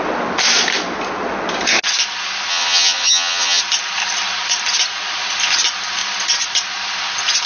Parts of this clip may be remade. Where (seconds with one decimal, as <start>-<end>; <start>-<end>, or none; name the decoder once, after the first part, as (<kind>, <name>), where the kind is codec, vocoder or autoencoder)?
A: 2.5-3.6 (vocoder, HiFi-GAN)